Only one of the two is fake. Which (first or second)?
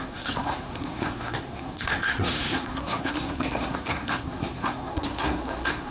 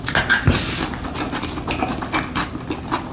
first